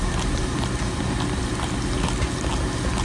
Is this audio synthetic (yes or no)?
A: no